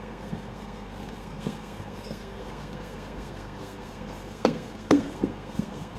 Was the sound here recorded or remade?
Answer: remade